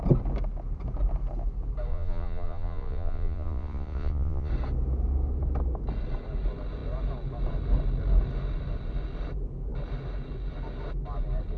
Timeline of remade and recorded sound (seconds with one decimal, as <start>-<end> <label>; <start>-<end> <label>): 0.0-1.9 recorded; 1.9-4.5 remade; 4.5-11.6 recorded